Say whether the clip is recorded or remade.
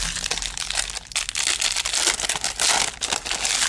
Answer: recorded